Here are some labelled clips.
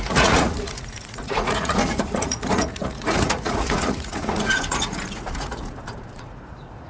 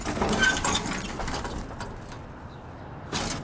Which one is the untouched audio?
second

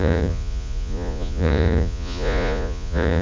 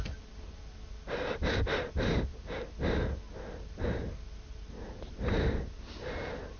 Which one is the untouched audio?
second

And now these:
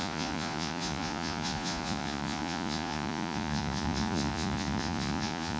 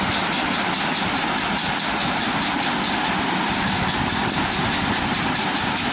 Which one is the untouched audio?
second